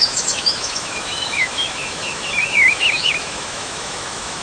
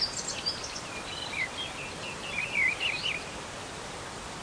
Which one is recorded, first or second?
second